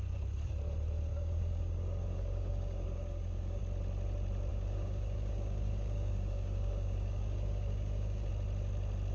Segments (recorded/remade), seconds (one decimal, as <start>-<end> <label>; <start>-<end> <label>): 0.0-1.1 recorded; 1.1-3.6 remade; 3.6-4.5 recorded; 4.5-8.3 remade; 8.3-9.1 recorded